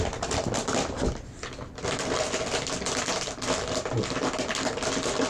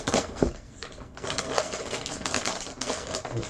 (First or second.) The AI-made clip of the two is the second